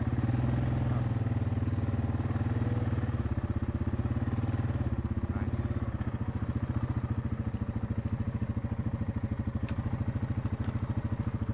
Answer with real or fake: real